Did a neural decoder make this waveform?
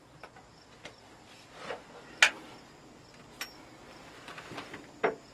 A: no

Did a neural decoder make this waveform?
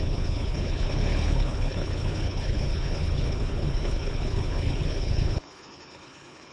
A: yes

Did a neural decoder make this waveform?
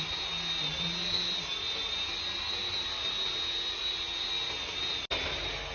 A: no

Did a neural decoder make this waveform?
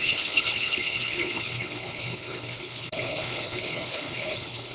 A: yes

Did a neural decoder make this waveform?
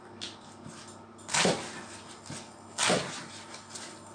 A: no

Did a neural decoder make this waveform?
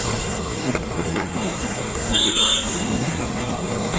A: yes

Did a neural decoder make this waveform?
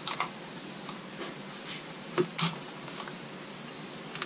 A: no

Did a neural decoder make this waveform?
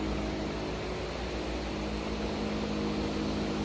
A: no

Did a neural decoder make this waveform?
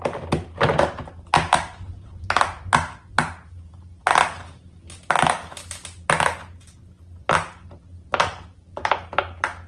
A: no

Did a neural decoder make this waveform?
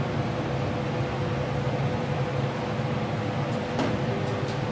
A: no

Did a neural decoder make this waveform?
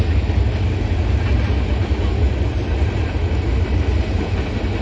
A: no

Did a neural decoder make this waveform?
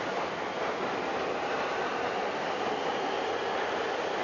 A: no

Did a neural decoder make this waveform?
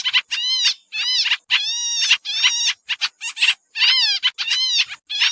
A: no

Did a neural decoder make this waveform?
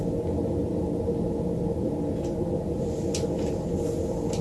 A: no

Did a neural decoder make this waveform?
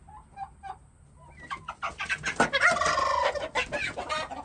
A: no